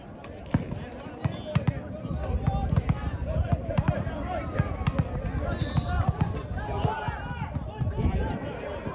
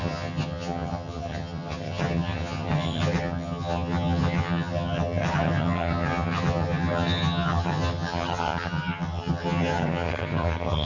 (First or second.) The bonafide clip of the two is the first